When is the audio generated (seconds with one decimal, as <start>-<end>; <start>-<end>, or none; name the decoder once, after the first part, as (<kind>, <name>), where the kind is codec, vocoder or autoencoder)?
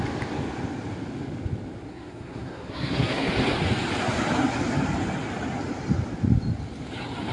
1.9-3.3 (codec, SNAC)